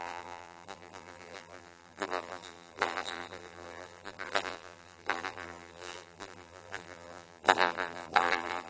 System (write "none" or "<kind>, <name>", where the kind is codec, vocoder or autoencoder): vocoder, BigVGAN v2